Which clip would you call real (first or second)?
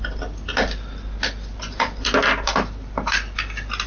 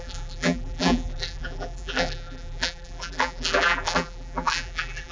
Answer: first